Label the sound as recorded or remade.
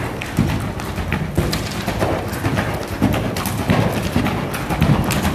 recorded